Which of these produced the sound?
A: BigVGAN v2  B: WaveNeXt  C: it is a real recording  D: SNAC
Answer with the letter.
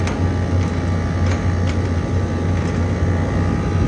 C